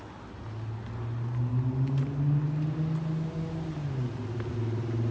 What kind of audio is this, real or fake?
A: real